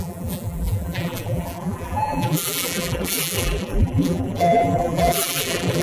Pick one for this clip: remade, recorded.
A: remade